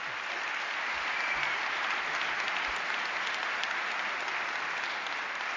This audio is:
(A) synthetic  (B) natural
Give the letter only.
B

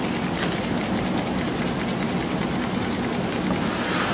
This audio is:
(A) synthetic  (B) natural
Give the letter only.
B